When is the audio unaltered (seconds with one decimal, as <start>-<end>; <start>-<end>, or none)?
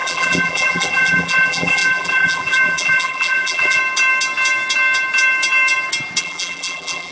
3.8-6.2